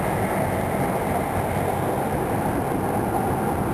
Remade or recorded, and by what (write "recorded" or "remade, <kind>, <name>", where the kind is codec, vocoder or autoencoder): recorded